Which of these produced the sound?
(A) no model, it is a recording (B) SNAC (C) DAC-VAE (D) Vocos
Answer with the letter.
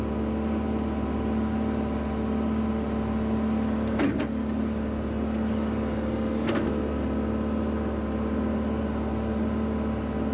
A